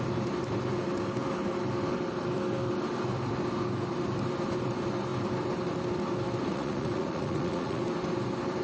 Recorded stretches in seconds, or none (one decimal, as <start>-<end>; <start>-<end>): 0.0-6.5; 7.8-8.6